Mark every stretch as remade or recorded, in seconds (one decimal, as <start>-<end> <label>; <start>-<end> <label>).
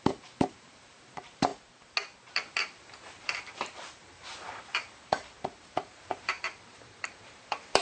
0.0-1.5 remade; 1.5-2.3 recorded; 2.3-7.8 remade